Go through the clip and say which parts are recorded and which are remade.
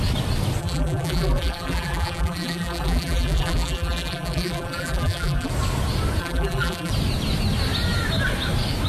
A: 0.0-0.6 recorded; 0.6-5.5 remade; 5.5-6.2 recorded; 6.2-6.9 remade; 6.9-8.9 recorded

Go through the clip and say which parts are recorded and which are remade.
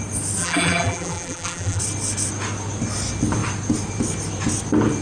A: 0.0-0.4 recorded; 0.4-1.8 remade; 1.8-5.0 recorded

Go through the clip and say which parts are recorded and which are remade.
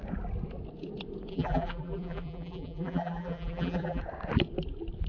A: 0.0-1.3 recorded; 1.3-4.0 remade; 4.0-5.1 recorded